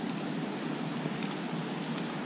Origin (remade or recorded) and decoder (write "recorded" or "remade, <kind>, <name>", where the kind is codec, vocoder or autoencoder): recorded